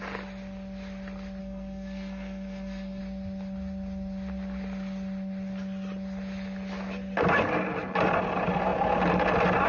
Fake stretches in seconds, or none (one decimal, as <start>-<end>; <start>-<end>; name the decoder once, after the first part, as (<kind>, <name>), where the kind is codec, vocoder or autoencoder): 1.4-3.0 (codec, SNAC)